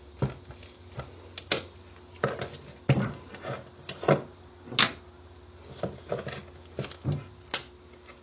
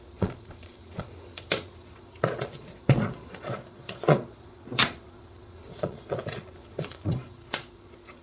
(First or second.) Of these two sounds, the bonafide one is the first